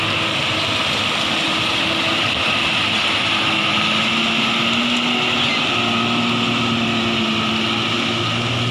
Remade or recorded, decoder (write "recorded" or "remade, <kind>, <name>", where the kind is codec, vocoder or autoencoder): recorded